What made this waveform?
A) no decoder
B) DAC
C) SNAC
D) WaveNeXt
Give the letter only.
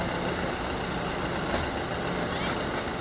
A